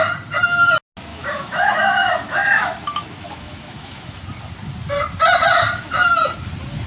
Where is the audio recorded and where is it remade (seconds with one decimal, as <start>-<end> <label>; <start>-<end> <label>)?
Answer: 0.0-1.1 recorded; 1.1-4.2 remade; 4.2-6.9 recorded